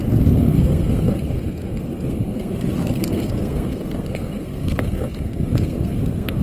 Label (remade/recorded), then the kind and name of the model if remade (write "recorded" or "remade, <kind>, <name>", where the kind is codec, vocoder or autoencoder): remade, codec, SNAC